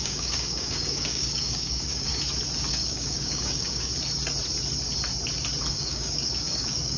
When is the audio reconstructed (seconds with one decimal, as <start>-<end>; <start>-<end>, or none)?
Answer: 0.0-2.1; 2.7-3.9; 5.7-7.0